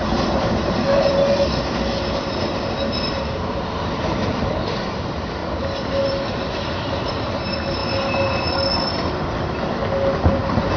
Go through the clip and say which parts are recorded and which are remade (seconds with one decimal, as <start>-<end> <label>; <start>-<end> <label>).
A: 0.0-0.8 remade; 0.8-3.1 recorded; 3.1-5.4 remade; 5.4-7.1 recorded; 7.1-7.8 remade; 7.8-10.8 recorded